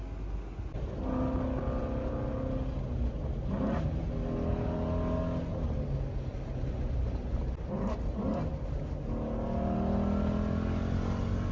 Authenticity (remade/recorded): recorded